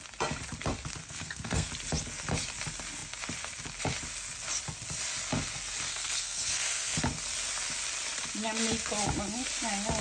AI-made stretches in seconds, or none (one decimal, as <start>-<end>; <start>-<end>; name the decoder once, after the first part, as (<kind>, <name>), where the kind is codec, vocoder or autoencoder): 1.0-1.7 (codec, SNAC); 5.9-7.0